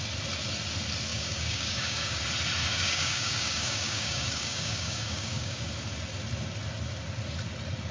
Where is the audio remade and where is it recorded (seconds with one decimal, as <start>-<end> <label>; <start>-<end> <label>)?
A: 0.0-1.1 recorded; 1.1-2.2 remade; 2.2-2.6 recorded; 2.6-5.7 remade; 5.7-7.9 recorded